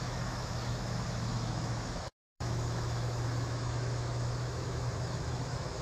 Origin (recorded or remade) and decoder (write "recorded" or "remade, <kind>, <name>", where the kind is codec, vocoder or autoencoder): remade, autoencoder, DAC-VAE